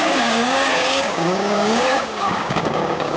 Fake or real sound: fake